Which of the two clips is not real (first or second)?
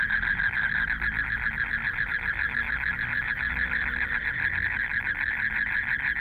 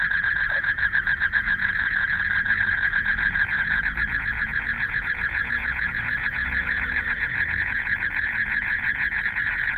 second